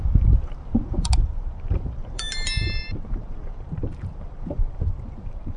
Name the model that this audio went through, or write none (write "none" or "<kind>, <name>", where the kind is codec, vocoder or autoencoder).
vocoder, BigVGAN v2